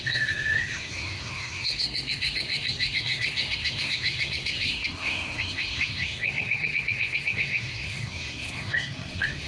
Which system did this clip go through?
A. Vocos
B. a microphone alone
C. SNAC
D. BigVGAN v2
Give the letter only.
C